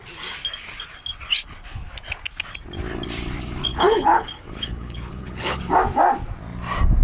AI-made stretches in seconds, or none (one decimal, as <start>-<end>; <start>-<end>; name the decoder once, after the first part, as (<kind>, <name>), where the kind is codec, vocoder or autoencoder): 3.7-5.6 (codec, HILCodec)